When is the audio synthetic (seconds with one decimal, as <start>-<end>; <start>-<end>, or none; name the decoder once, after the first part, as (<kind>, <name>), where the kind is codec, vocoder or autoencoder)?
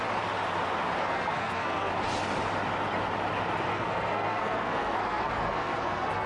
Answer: 1.0-1.9 (codec, SNAC); 3.7-6.3